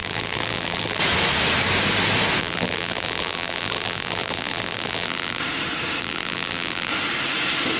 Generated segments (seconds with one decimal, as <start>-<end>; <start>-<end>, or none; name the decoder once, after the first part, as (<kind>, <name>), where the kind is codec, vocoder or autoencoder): 0.0-1.0 (vocoder, BigVGAN v2); 2.4-5.4; 6.0-6.9

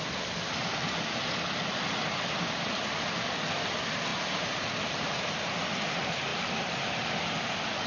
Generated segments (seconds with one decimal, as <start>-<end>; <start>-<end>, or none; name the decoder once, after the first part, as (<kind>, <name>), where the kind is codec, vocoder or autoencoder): 4.1-5.4 (vocoder, BigVGAN v2); 6.3-7.1

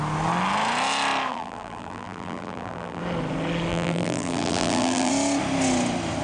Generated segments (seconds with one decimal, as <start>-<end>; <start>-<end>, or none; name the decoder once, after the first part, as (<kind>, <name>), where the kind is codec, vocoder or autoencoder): 1.3-3.0 (vocoder, BigVGAN v2); 3.7-5.1

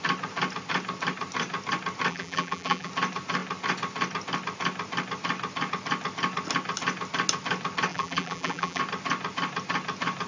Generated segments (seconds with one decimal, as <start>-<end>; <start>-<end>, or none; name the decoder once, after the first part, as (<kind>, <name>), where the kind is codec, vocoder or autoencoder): 2.1-2.9 (vocoder, BigVGAN v2); 7.9-8.8

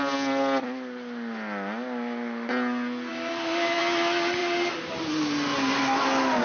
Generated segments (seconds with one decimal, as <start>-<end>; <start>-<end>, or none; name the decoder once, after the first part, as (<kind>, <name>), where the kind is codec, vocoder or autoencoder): 3.1-3.8 (vocoder, BigVGAN v2); 4.4-5.8

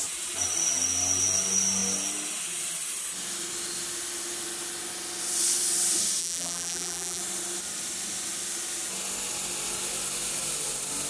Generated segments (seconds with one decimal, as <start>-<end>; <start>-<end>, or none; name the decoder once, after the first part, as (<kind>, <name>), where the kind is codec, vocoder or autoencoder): 6.2-7.2 (vocoder, BigVGAN v2)

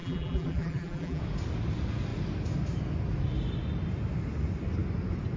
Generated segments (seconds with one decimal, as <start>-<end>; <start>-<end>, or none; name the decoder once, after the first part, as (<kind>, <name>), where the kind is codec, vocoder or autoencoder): 0.0-1.2 (vocoder, BigVGAN v2)